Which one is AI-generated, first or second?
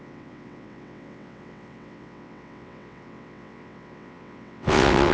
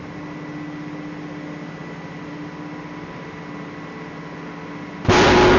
first